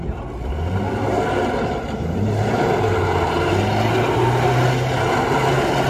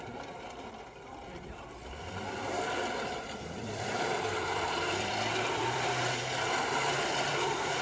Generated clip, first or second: second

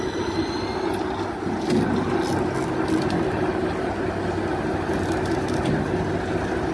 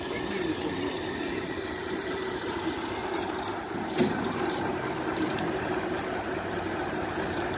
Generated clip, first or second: second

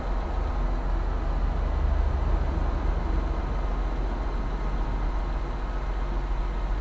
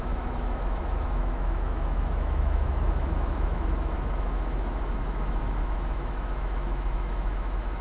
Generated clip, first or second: second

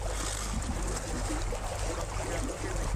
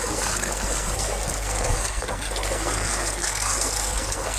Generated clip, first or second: second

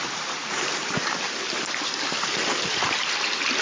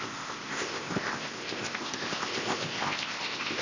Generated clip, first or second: second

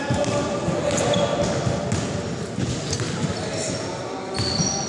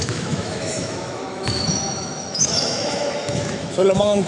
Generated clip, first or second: second